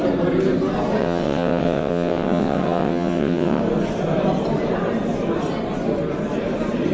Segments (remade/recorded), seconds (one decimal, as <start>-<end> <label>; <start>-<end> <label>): 0.0-1.0 recorded; 1.0-3.6 remade; 3.6-6.9 recorded